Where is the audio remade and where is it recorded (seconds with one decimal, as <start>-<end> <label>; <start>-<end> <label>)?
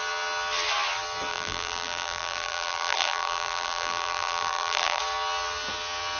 0.0-1.3 recorded; 1.3-5.0 remade; 5.0-6.2 recorded